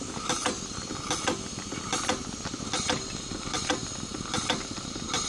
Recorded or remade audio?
recorded